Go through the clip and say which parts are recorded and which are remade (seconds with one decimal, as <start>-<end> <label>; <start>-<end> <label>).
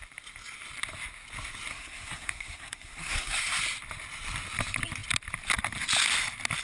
0.0-1.7 recorded; 1.7-3.6 remade; 3.6-6.6 recorded